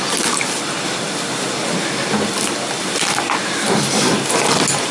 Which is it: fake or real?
real